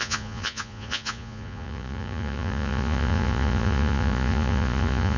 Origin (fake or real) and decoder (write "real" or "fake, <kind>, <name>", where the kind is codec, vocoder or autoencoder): fake, vocoder, Vocos